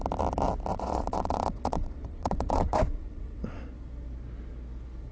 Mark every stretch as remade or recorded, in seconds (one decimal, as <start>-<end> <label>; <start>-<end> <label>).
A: 0.0-0.7 recorded; 0.7-3.6 remade; 3.6-5.1 recorded